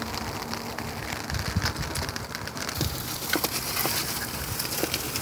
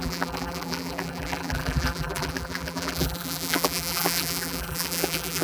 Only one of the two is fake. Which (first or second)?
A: second